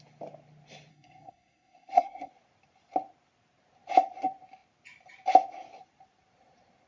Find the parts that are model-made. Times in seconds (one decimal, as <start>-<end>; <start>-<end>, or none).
0.9-2.3